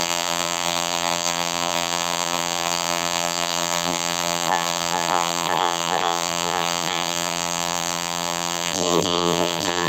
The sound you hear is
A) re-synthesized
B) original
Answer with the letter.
A